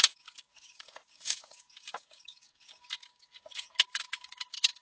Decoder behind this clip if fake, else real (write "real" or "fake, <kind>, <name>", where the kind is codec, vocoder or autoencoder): fake, codec, DAC